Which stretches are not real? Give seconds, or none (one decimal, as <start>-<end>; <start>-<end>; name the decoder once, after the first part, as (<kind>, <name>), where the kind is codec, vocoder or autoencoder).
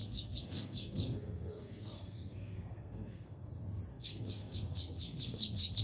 0.0-3.5 (codec, SNAC); 3.9-5.8